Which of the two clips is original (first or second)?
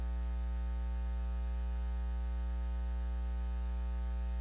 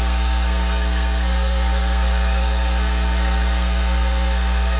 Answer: first